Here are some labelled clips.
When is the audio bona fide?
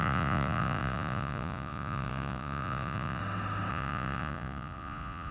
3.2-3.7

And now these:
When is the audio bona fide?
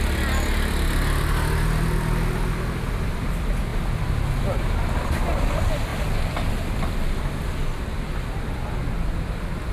0.0-9.7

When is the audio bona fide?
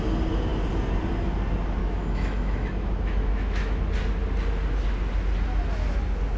0.0-1.8; 3.8-6.4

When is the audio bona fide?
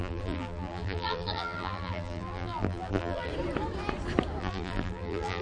3.3-4.4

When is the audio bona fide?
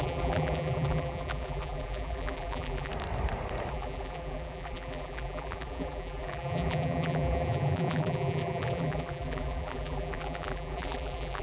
2.9-3.7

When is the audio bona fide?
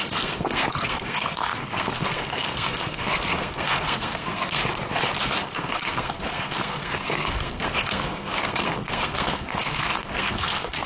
4.6-5.2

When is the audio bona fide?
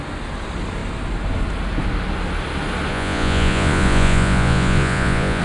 0.0-2.9